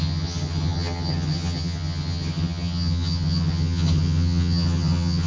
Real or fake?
fake